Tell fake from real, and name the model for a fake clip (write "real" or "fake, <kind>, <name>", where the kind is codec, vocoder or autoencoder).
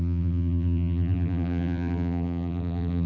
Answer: fake, vocoder, BigVGAN v2